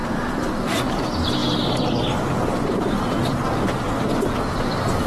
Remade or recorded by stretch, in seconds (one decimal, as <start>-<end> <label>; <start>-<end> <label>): 0.0-0.5 recorded; 0.5-5.1 remade